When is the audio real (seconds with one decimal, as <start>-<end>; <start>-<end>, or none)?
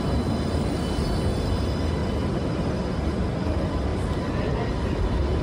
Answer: 0.0-5.4